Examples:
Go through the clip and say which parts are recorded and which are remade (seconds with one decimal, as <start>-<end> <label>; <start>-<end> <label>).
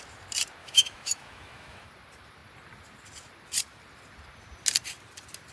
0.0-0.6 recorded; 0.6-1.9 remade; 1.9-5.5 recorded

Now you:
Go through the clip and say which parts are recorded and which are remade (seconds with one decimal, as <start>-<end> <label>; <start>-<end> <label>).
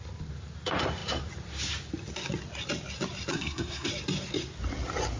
0.0-3.3 recorded; 3.3-3.9 remade; 3.9-5.2 recorded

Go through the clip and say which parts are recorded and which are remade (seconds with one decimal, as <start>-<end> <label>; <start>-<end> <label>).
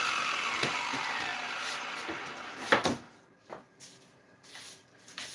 0.0-5.3 recorded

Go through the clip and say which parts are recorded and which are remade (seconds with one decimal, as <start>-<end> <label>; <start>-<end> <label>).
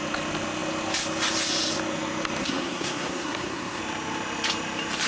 0.0-2.4 recorded; 2.4-3.8 remade; 3.8-5.1 recorded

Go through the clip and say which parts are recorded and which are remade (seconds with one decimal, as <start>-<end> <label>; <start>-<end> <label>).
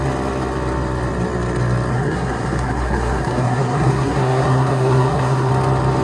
0.0-1.9 recorded; 1.9-5.5 remade; 5.5-6.0 recorded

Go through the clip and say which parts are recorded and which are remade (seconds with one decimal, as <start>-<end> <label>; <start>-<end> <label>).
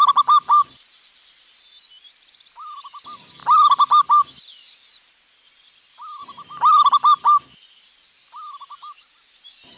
0.0-9.8 recorded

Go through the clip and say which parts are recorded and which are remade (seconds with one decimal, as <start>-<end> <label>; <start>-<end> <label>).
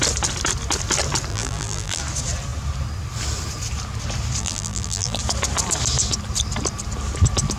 0.0-1.3 recorded; 1.3-2.0 remade; 2.0-4.4 recorded; 4.4-5.2 remade; 5.2-7.6 recorded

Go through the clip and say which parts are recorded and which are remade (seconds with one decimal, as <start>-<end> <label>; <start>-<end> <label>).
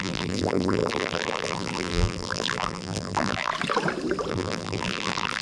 0.0-3.5 remade; 3.5-4.3 recorded; 4.3-5.4 remade